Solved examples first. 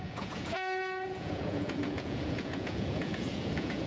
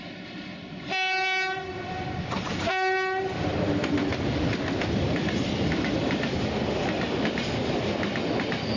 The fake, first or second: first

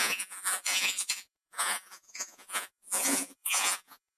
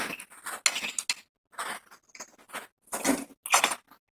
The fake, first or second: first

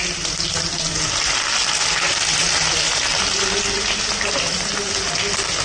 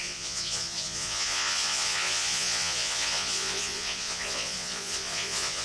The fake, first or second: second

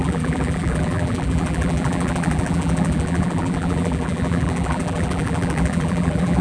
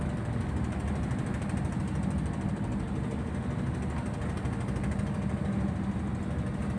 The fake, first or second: first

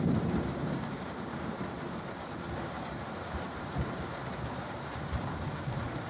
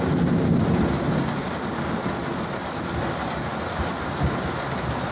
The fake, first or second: first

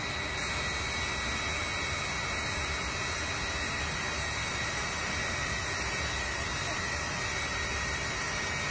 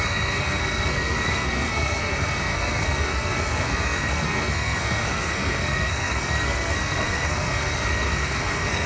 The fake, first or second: second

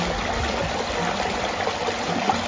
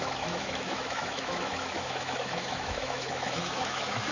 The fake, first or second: second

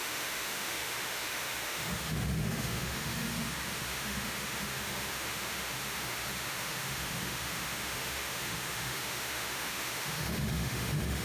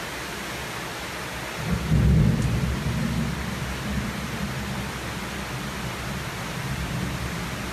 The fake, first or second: first